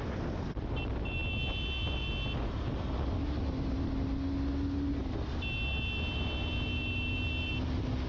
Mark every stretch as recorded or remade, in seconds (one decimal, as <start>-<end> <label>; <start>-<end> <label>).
0.0-8.1 recorded